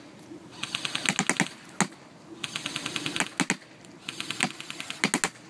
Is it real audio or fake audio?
real